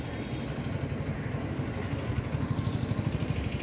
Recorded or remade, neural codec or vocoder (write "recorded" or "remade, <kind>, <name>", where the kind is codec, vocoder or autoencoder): recorded